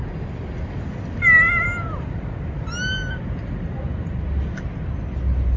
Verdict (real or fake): real